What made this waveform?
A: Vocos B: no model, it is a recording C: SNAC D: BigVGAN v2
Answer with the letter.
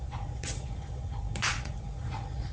A